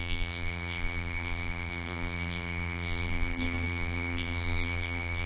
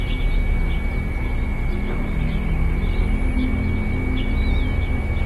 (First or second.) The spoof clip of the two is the first